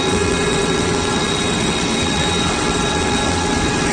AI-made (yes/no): yes